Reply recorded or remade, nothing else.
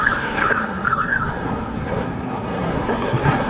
remade